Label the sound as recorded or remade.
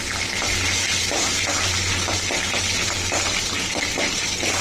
recorded